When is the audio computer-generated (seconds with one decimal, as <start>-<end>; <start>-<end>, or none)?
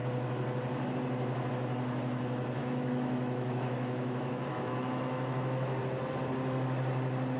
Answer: 2.6-5.8